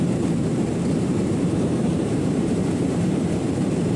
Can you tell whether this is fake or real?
fake